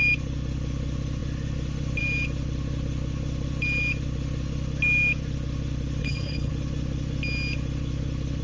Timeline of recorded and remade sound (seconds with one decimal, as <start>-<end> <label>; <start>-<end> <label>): 0.0-6.0 recorded; 6.0-6.5 remade; 6.5-8.4 recorded